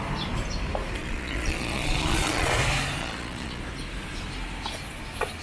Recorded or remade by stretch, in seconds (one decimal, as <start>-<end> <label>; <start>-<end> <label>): 0.0-1.0 recorded; 1.0-2.5 remade; 2.5-3.0 recorded; 3.0-3.6 remade; 3.6-5.4 recorded